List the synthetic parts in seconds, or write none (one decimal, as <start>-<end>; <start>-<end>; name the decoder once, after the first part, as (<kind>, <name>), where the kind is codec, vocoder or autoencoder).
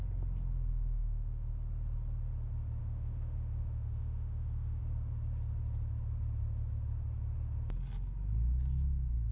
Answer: 0.7-1.5 (autoencoder, DAC-VAE); 2.8-4.8